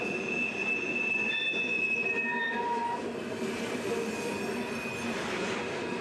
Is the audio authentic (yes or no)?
yes